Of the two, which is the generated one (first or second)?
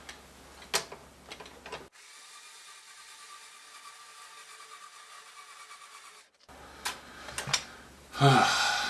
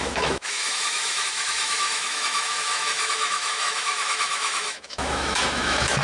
second